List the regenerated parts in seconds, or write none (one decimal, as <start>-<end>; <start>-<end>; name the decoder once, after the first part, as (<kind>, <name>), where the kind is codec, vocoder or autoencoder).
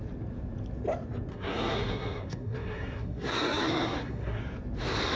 1.3-4.4 (codec, SNAC)